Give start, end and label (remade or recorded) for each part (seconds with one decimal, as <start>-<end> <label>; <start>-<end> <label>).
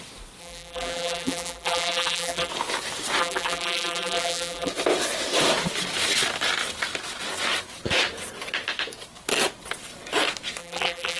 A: 0.0-0.4 recorded; 0.4-2.5 remade; 2.5-3.2 recorded; 3.2-4.7 remade; 4.7-10.6 recorded; 10.6-11.2 remade